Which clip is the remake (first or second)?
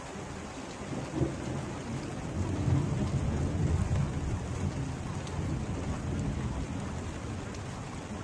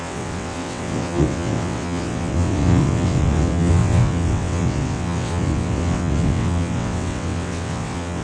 second